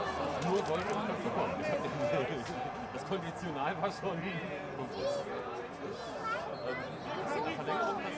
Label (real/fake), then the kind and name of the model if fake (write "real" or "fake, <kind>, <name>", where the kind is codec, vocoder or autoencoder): real